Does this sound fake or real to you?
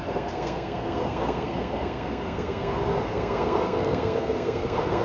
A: fake